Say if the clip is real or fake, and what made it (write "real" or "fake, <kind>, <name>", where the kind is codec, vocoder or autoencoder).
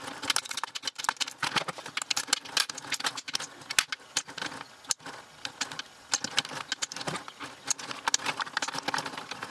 real